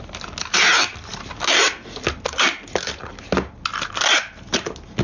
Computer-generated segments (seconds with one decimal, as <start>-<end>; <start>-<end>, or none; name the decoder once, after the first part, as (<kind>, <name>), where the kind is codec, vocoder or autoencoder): none